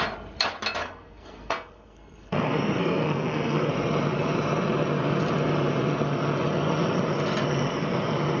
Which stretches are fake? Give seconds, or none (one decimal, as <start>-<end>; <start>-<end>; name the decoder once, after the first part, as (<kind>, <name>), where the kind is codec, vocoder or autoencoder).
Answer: 0.8-3.7 (codec, SNAC)